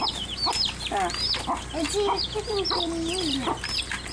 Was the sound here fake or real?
real